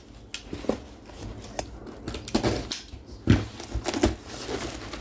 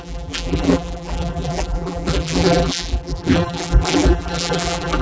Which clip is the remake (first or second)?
second